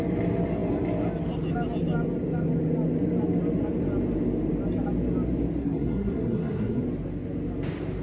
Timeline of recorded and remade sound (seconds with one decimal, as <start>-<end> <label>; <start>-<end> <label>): 0.0-5.6 recorded; 5.6-6.8 remade; 6.8-8.0 recorded